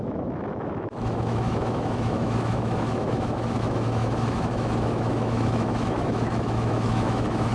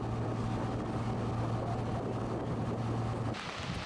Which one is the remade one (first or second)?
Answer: first